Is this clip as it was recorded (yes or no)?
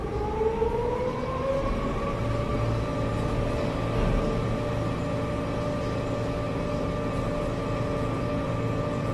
yes